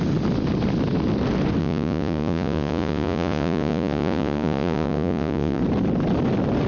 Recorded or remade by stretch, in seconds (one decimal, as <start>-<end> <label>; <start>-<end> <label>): 0.0-1.6 recorded; 1.6-5.6 remade; 5.6-6.7 recorded